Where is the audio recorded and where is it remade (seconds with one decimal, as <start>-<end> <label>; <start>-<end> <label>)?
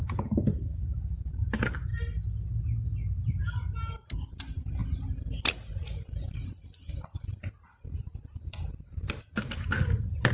0.0-1.9 remade; 1.9-4.3 recorded; 4.3-4.8 remade; 4.8-5.7 recorded; 5.7-6.4 remade; 6.4-7.8 recorded; 7.8-10.3 remade